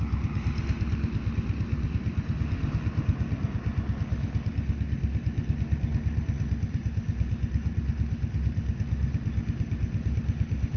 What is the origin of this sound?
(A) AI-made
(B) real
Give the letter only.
B